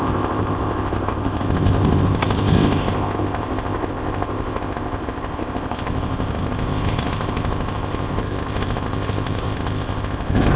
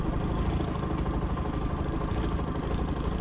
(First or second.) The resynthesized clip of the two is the first